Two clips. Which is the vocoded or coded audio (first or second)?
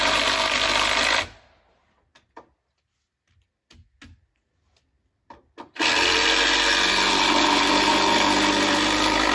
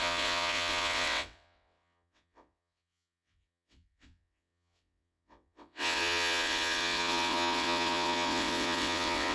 second